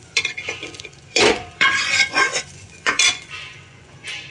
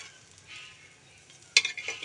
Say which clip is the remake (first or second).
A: first